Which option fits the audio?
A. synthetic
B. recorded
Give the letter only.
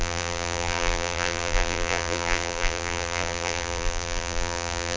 A